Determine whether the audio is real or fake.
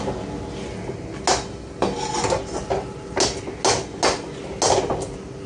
real